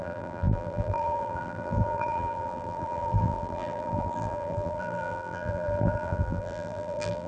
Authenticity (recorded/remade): remade